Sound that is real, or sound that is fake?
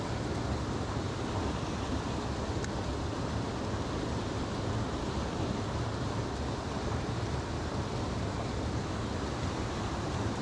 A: real